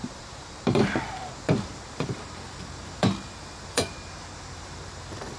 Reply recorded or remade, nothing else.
remade